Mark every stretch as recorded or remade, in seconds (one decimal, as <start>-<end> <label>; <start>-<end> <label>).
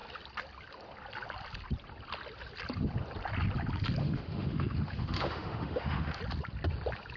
0.0-4.0 recorded; 4.0-6.2 remade; 6.2-7.2 recorded